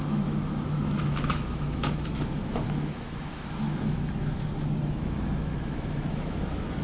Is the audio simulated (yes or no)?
yes